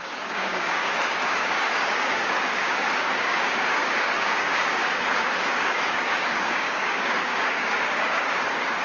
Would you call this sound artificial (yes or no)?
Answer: yes